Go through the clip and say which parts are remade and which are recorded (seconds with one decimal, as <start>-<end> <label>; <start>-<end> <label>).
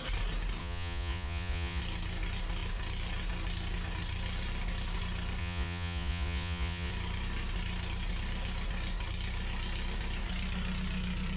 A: 0.0-0.6 recorded; 0.6-1.8 remade; 1.8-5.4 recorded; 5.4-6.9 remade; 6.9-11.4 recorded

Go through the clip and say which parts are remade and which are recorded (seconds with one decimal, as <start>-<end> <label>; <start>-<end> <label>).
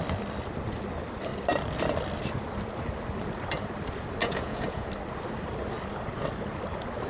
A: 0.0-4.2 recorded; 4.2-4.9 remade; 4.9-7.1 recorded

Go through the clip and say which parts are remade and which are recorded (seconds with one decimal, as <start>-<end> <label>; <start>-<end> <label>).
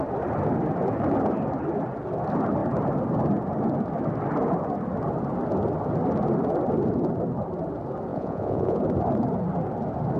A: 0.0-8.1 recorded; 8.1-8.8 remade; 8.8-10.2 recorded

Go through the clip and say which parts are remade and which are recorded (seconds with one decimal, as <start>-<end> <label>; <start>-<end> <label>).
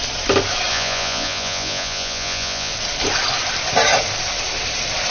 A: 0.0-0.7 recorded; 0.7-2.7 remade; 2.7-5.1 recorded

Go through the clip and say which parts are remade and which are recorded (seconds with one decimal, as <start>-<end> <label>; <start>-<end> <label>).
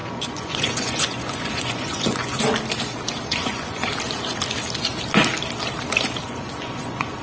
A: 0.0-2.4 remade; 2.4-3.3 recorded; 3.3-3.9 remade; 3.9-6.2 recorded; 6.2-7.2 remade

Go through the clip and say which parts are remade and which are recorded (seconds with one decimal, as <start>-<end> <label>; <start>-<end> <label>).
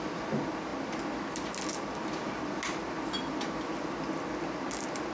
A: 0.0-5.1 recorded